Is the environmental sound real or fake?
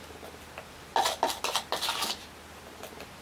real